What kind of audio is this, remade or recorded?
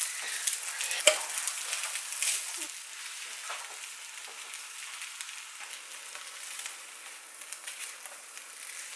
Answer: recorded